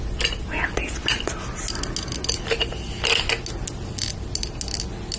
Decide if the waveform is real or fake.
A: real